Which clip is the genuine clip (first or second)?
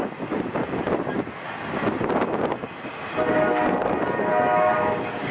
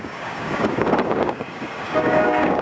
first